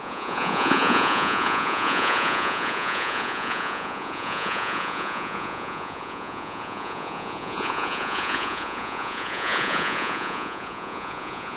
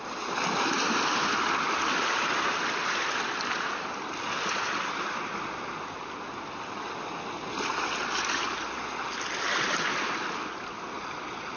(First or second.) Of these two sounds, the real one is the second